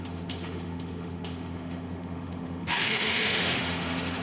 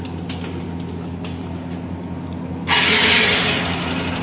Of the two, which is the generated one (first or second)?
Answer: first